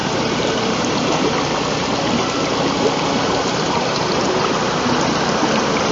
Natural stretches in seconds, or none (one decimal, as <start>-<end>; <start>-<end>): 1.3-3.5; 4.5-5.9